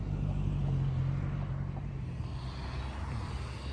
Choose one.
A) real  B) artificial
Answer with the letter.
A